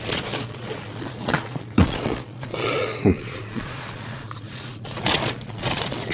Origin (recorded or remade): remade